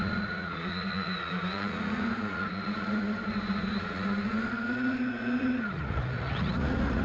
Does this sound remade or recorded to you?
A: remade